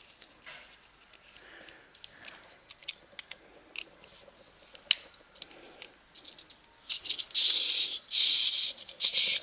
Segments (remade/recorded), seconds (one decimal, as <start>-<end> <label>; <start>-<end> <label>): 0.0-9.4 recorded